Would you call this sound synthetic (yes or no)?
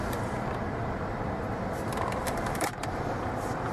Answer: yes